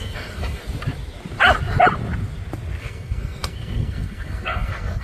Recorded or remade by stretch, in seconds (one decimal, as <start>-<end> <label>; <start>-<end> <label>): 0.0-0.6 remade; 0.6-2.8 recorded; 2.8-5.0 remade